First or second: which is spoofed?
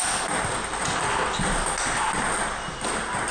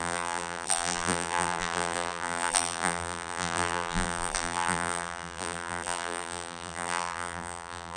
second